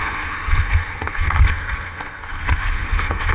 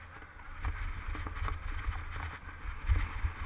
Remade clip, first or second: first